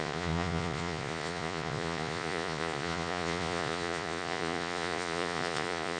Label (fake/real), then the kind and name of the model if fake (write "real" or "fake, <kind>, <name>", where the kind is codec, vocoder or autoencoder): fake, vocoder, Vocos